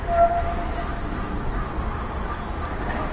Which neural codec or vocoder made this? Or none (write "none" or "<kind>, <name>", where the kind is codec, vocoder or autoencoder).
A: none